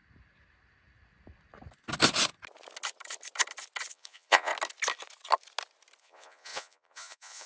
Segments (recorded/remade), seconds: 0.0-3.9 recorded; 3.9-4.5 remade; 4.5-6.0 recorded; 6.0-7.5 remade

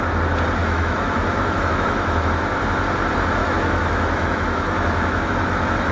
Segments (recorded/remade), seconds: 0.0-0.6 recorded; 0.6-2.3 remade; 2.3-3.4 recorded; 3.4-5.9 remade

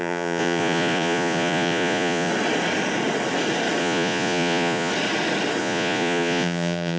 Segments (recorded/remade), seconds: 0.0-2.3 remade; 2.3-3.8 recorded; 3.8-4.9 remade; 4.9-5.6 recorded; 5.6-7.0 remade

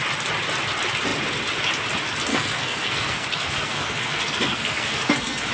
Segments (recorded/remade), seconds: 0.0-2.3 recorded; 2.3-5.5 remade

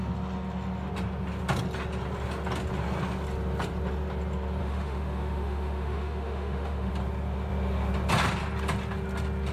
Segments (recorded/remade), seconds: 0.0-4.6 recorded; 4.6-6.9 remade; 6.9-9.5 recorded

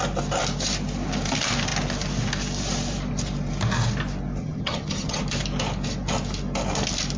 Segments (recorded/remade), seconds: 0.0-4.4 recorded; 4.4-5.2 remade; 5.2-7.2 recorded

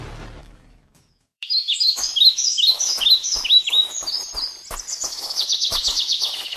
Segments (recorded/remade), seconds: 0.0-0.4 recorded; 0.4-4.0 remade; 4.0-4.9 recorded; 4.9-6.6 remade